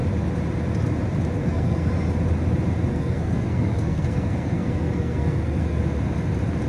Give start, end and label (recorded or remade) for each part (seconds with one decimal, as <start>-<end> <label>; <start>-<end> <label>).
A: 0.0-1.4 recorded; 1.4-1.9 remade; 1.9-2.9 recorded; 2.9-5.8 remade; 5.8-6.7 recorded